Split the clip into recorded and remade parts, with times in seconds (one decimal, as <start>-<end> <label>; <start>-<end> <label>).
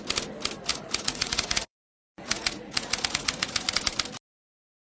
0.0-0.7 recorded; 0.7-3.7 remade; 3.7-5.0 recorded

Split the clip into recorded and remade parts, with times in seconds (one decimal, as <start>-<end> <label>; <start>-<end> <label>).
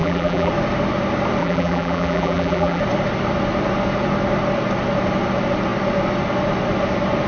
0.0-0.5 remade; 0.5-1.4 recorded; 1.4-2.8 remade; 2.8-7.3 recorded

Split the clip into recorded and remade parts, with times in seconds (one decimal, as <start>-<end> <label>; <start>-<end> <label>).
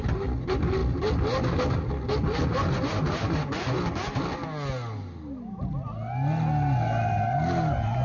0.0-8.0 recorded